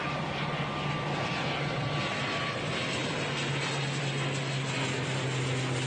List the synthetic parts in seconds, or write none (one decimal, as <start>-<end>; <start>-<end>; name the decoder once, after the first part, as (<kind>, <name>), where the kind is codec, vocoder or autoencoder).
none